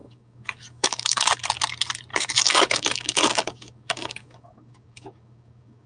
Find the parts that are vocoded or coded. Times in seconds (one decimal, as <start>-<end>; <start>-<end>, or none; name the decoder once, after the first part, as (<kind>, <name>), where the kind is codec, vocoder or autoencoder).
0.0-1.3 (codec, DAC); 2.1-5.9